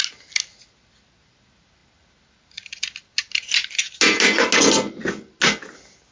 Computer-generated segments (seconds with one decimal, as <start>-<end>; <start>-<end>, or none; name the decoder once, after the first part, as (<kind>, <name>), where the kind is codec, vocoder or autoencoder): none